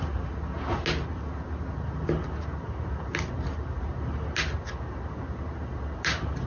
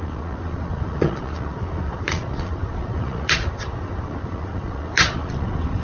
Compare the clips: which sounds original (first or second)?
first